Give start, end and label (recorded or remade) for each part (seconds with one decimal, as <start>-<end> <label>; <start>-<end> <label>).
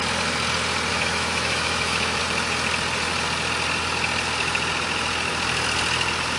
0.0-0.9 recorded; 0.9-2.2 remade; 2.2-6.4 recorded